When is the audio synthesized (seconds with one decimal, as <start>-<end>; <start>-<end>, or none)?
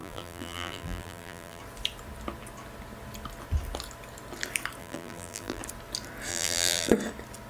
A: 0.0-1.6; 4.8-5.6; 6.3-6.9